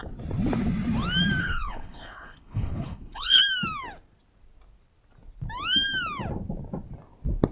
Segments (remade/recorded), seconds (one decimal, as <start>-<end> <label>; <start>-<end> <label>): 0.0-1.4 recorded; 1.4-3.4 remade; 3.4-7.5 recorded